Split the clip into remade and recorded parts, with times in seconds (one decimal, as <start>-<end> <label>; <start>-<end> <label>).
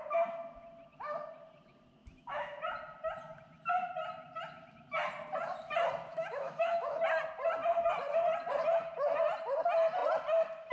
0.0-2.0 recorded; 2.0-2.6 remade; 2.6-6.1 recorded; 6.1-7.0 remade; 7.0-10.7 recorded